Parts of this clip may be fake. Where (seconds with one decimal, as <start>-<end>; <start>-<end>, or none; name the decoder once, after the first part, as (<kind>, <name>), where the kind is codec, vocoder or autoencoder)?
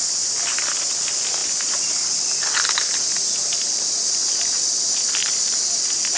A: 0.0-6.2 (vocoder, BigVGAN v2)